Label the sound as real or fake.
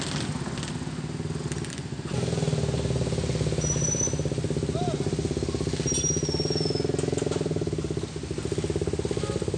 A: real